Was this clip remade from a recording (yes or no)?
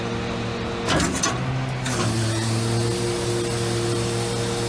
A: no